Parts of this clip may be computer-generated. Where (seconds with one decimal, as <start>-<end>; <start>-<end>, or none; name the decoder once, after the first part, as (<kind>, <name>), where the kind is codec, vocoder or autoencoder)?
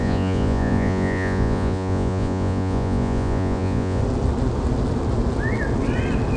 0.0-4.0 (vocoder, Vocos)